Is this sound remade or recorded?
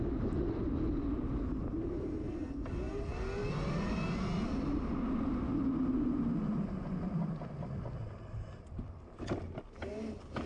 recorded